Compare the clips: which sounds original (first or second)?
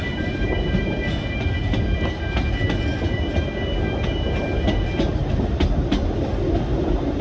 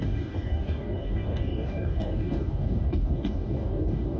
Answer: first